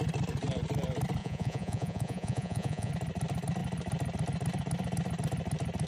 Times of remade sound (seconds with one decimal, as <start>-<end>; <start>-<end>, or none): 1.2-2.9